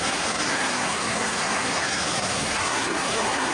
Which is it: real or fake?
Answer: fake